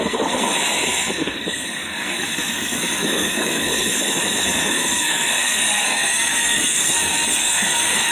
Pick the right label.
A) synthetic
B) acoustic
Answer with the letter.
A